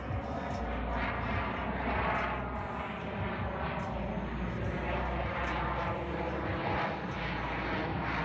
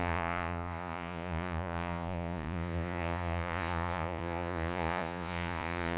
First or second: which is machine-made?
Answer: second